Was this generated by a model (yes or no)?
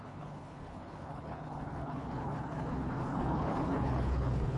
yes